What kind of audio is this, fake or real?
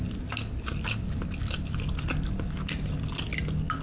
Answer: real